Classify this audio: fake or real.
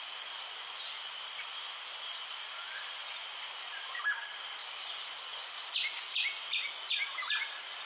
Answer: real